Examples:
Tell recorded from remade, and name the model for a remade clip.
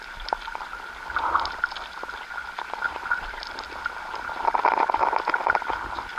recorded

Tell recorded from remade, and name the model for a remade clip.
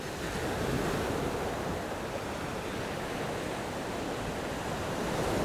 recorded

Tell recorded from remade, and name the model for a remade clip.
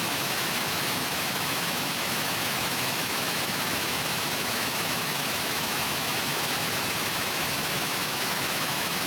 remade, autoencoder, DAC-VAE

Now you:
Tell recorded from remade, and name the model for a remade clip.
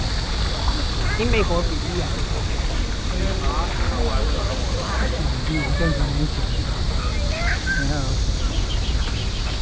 recorded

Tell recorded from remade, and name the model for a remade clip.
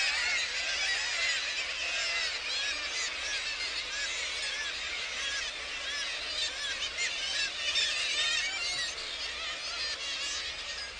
recorded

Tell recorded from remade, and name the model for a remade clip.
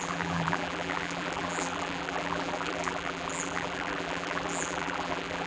remade, vocoder, BigVGAN v2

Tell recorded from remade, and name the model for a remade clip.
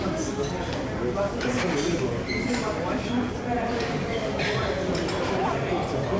recorded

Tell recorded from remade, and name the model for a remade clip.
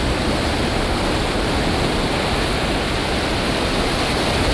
recorded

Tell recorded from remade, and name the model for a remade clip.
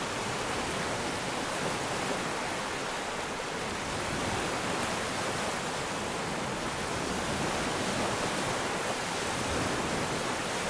recorded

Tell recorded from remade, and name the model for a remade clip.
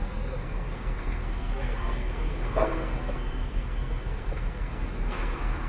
remade, codec, SNAC